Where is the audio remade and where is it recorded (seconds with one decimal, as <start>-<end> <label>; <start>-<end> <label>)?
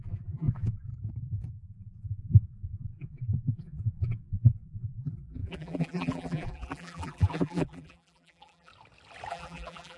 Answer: 0.0-0.9 remade; 0.9-1.5 recorded; 1.5-8.7 remade; 8.7-9.3 recorded; 9.3-10.0 remade